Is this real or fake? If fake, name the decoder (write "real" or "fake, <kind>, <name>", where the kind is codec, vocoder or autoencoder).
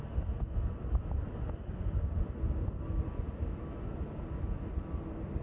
real